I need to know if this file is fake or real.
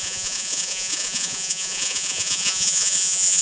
fake